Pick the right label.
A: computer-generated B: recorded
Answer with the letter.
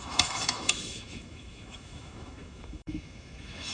A